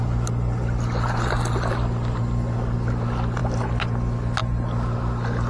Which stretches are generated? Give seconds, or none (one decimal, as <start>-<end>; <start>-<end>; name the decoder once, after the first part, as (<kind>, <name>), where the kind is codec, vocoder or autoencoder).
none